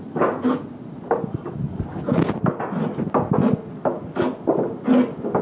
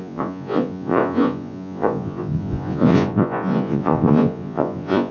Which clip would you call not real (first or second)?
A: second